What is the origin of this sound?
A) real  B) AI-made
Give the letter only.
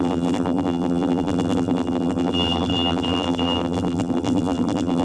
B